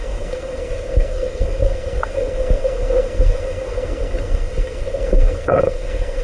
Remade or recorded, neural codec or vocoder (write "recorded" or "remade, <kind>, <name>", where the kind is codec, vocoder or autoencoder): remade, codec, SNAC